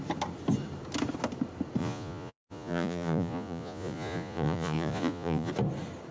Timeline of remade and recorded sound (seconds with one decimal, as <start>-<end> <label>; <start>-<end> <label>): 0.0-1.8 recorded; 1.8-5.5 remade; 5.5-6.1 recorded